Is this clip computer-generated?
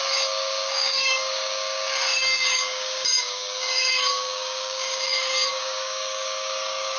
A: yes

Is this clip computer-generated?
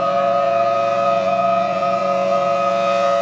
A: yes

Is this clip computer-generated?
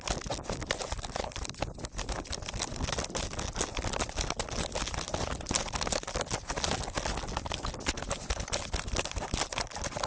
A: no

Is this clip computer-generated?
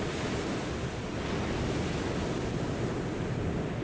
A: no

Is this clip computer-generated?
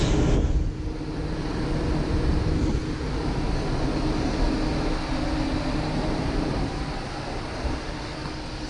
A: no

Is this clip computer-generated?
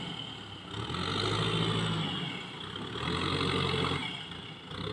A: no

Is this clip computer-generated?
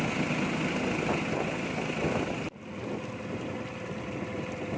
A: no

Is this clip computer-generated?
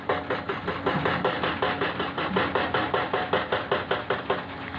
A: no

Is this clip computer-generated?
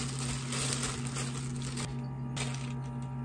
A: no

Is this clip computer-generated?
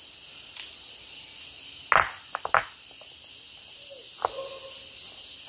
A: no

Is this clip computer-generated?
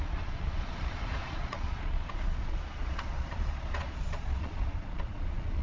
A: yes